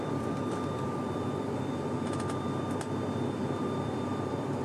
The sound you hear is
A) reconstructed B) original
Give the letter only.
A